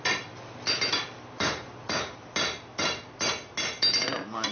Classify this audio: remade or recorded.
recorded